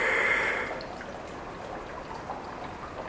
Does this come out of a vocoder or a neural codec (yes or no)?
no